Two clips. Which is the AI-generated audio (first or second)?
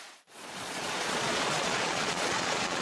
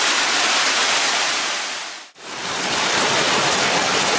first